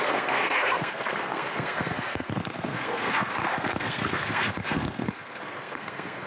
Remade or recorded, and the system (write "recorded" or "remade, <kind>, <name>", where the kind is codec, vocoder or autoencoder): remade, codec, SNAC